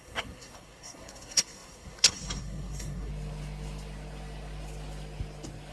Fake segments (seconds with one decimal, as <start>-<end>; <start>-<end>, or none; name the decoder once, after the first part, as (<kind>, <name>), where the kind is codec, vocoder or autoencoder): 0.0-3.1 (codec, SNAC)